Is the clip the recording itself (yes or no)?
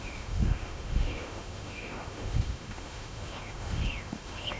no